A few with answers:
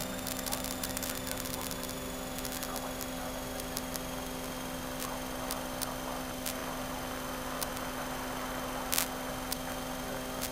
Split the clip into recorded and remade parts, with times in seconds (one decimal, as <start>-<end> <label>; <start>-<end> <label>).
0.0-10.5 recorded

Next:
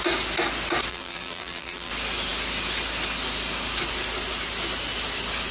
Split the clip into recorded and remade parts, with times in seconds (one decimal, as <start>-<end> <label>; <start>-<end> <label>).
0.0-0.9 recorded; 0.9-1.9 remade; 1.9-5.5 recorded

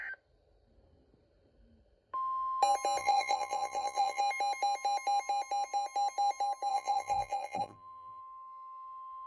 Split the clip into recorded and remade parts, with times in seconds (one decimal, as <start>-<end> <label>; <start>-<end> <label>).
0.0-3.0 recorded; 3.0-4.2 remade; 4.2-6.7 recorded; 6.7-8.2 remade; 8.2-9.3 recorded

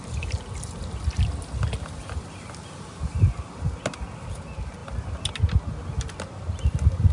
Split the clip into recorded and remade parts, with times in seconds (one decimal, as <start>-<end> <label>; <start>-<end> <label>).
0.0-4.8 recorded; 4.8-5.3 remade; 5.3-7.1 recorded

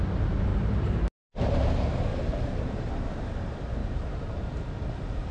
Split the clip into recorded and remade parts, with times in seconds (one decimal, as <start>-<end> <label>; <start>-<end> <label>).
0.0-0.5 recorded; 0.5-1.1 remade; 1.1-2.1 recorded; 2.1-2.9 remade; 2.9-3.8 recorded; 3.8-5.3 remade

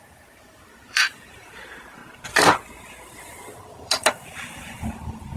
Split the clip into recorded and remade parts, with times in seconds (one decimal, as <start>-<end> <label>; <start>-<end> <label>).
0.0-2.0 remade; 2.0-3.6 recorded; 3.6-5.4 remade

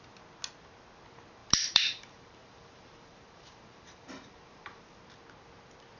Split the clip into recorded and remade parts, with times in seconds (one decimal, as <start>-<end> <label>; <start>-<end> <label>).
0.0-1.4 recorded; 1.4-5.0 remade; 5.0-6.0 recorded

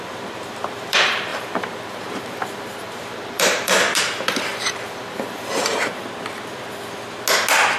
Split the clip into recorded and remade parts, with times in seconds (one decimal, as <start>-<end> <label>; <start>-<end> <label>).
0.0-6.0 remade; 6.0-7.8 recorded